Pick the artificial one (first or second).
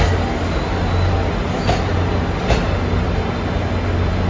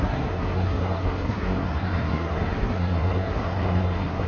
second